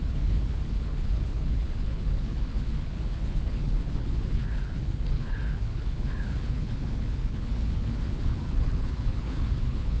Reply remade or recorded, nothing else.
remade